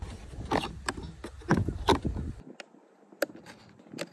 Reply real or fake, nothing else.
real